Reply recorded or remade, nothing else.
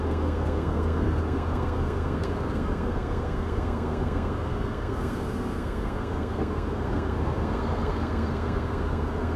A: remade